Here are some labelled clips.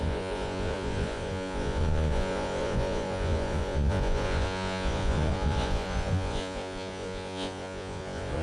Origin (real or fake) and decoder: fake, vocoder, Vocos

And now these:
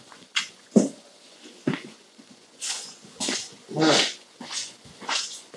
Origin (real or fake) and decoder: fake, vocoder, Vocos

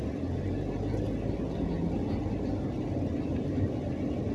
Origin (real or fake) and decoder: real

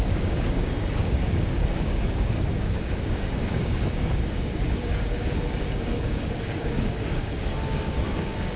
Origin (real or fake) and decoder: fake, codec, DAC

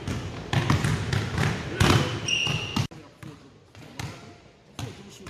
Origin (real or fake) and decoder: real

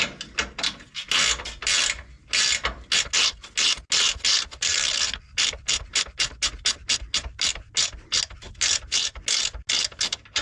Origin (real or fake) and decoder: real